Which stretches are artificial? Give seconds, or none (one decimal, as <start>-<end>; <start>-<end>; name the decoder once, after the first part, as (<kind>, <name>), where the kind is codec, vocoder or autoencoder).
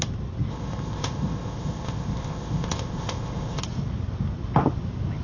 0.5-3.6 (codec, ZipCodec)